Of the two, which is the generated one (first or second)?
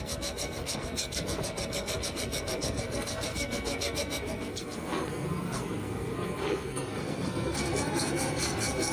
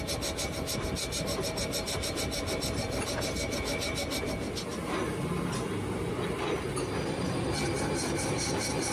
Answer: first